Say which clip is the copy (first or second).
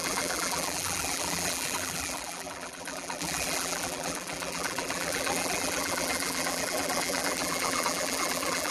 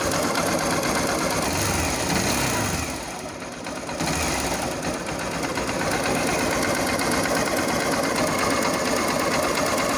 first